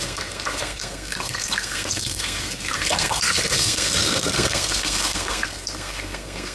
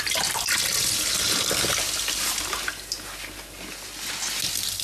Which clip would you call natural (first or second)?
second